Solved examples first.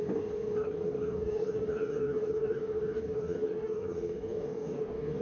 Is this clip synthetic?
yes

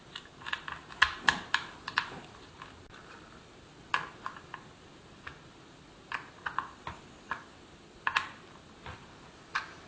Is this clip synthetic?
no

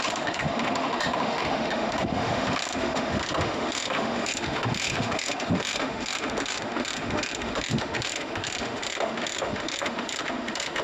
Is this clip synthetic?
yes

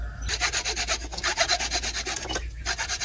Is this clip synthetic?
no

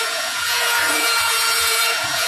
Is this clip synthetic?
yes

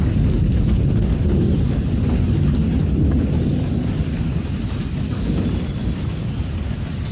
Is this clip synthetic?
no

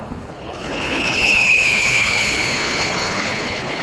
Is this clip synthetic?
yes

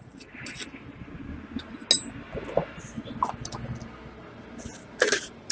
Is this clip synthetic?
no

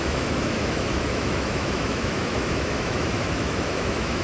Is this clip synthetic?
yes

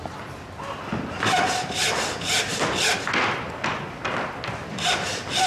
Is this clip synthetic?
no